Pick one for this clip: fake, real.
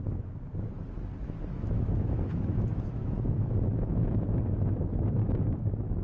fake